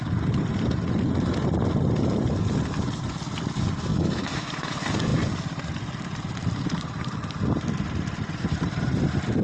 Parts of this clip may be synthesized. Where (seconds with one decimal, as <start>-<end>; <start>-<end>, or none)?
3.9-4.5